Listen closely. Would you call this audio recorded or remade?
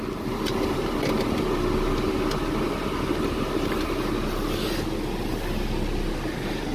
recorded